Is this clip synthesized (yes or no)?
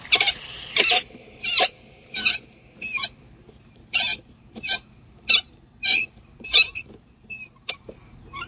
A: yes